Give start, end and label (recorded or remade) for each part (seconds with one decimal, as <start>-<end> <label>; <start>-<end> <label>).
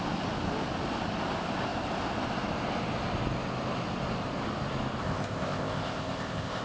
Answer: 0.0-5.0 recorded; 5.0-6.6 remade